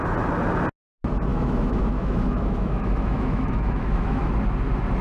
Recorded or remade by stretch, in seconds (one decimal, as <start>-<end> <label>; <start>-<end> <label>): 0.0-1.3 recorded; 1.3-4.3 remade; 4.3-5.0 recorded